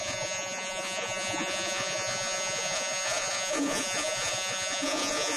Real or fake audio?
fake